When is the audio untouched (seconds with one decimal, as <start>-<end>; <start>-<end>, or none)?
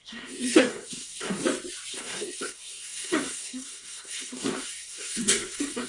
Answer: 1.4-1.9